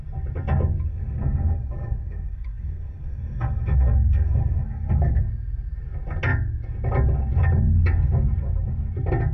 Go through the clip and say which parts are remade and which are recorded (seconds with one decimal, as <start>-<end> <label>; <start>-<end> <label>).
0.0-0.9 recorded; 0.9-5.2 remade; 5.2-9.3 recorded